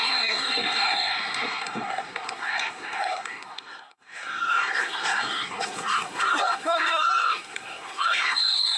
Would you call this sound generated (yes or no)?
yes